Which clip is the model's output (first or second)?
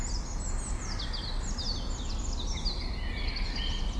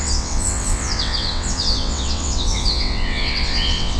second